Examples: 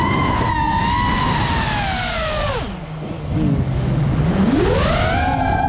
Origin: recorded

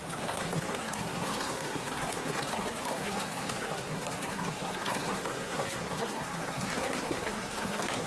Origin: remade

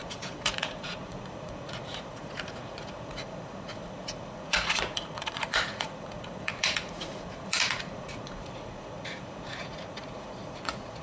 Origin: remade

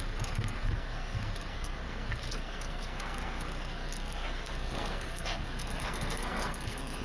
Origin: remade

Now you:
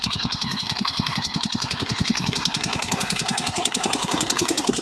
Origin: remade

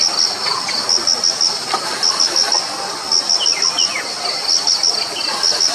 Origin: recorded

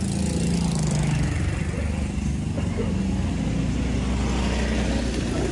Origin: recorded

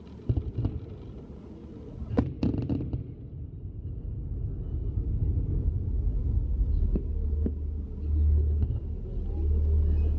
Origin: recorded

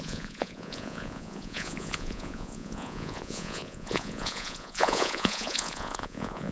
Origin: remade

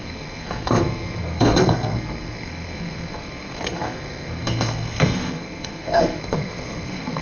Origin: remade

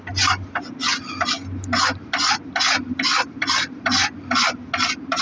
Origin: recorded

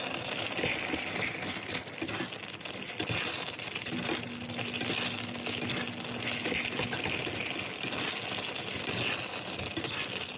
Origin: recorded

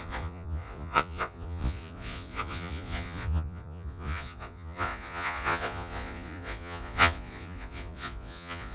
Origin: remade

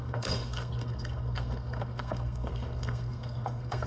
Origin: remade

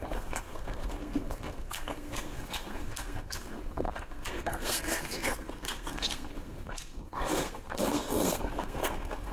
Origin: remade